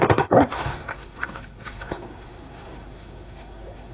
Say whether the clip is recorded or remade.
remade